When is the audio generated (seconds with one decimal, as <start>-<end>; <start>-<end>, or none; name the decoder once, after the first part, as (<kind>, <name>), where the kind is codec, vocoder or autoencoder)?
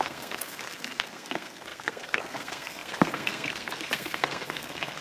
0.0-5.0 (codec, SNAC)